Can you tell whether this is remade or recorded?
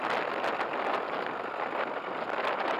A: recorded